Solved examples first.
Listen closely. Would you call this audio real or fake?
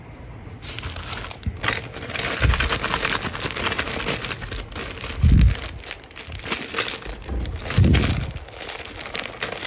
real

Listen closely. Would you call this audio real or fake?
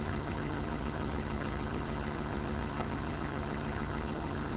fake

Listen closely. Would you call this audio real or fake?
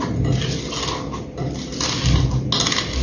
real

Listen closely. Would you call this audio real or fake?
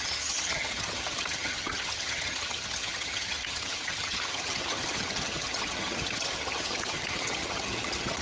fake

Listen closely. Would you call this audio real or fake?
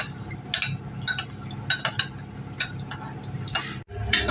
real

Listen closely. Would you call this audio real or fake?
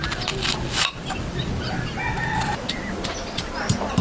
real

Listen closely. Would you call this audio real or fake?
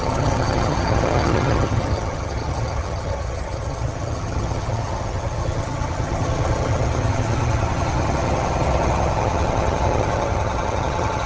fake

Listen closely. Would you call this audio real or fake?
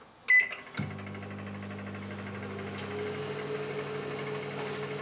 real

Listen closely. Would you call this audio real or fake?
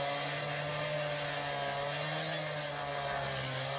real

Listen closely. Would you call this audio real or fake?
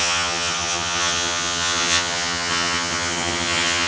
fake